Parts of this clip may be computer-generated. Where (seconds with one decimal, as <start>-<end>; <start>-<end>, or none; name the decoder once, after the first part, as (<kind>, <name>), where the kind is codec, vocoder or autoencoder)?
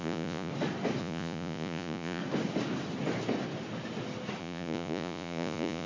0.0-0.5 (vocoder, Vocos); 1.0-2.2; 4.4-5.9